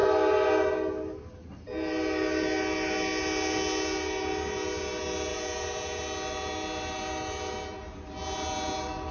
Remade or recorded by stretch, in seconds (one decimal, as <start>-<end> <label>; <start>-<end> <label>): 0.0-5.3 recorded; 5.3-6.0 remade; 6.0-9.1 recorded